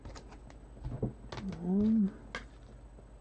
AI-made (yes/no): no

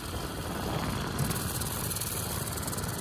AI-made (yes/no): no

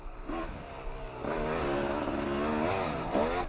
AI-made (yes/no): no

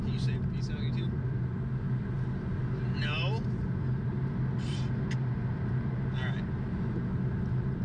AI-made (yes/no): no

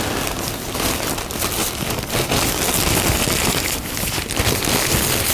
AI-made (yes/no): no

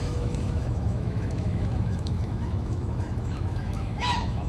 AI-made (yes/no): yes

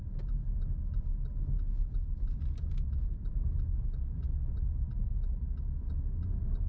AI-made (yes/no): no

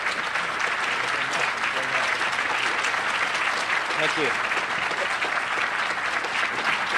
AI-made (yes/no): no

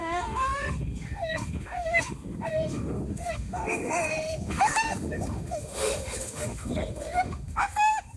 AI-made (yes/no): yes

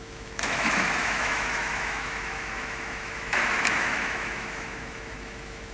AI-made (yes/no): yes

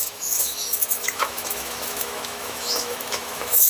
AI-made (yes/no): yes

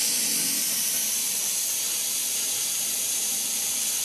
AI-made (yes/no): no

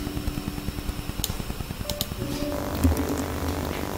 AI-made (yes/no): no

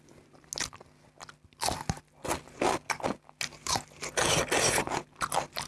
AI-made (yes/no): no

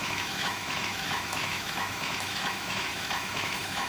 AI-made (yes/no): yes